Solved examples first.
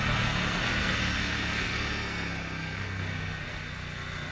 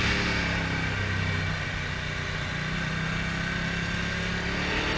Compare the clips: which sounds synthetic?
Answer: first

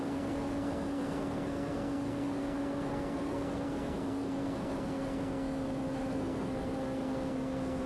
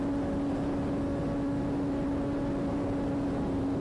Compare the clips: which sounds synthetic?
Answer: first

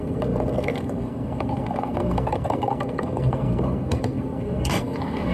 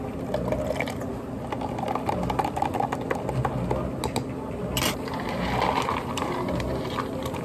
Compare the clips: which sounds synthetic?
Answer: first